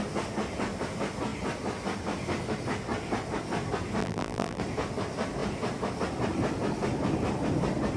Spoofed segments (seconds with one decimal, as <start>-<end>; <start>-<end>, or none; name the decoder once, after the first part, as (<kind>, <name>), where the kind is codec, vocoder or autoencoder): 4.0-4.6 (vocoder, BigVGAN v2)